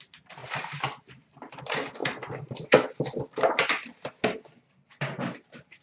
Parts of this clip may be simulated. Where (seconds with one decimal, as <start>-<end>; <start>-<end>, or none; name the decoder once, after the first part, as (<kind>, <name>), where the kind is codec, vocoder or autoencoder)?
0.4-1.6 (vocoder, BigVGAN v2)